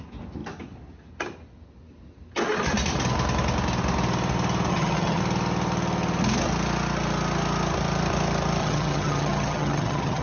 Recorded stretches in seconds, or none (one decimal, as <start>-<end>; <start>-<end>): 0.0-4.7; 5.2-8.6